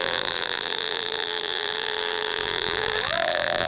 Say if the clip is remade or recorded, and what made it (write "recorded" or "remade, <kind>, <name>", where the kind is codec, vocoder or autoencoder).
remade, vocoder, BigVGAN v2